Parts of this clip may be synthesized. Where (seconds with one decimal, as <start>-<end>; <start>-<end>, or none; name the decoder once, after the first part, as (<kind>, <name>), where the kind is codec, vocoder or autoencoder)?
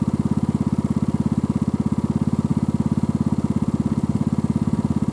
none